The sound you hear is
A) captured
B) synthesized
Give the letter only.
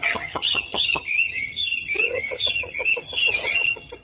B